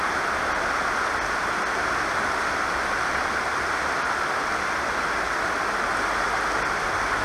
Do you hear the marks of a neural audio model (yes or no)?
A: no